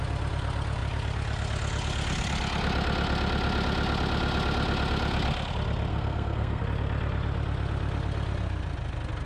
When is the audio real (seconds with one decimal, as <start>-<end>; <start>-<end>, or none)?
0.0-5.9; 6.6-9.3